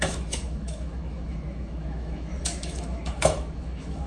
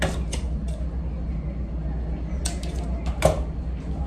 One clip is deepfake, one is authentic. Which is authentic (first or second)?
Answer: second